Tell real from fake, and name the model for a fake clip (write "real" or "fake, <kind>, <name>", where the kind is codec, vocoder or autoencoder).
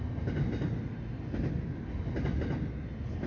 real